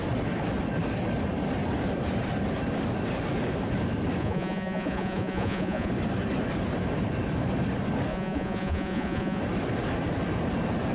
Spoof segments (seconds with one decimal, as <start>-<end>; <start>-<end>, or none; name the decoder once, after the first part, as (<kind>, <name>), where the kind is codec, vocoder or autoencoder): 4.2-5.9 (vocoder, Vocos); 8.1-9.4